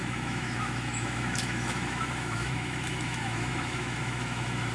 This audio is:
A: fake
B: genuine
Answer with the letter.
A